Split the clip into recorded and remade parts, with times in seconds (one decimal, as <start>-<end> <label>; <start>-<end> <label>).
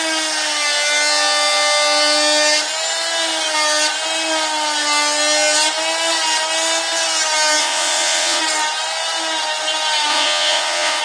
0.0-7.6 recorded; 7.6-8.4 remade; 8.4-10.1 recorded; 10.1-11.0 remade